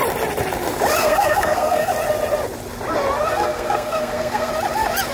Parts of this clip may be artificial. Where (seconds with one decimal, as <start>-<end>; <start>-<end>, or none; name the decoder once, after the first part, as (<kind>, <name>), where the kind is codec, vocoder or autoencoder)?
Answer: 1.0-1.9 (codec, SNAC); 3.3-4.5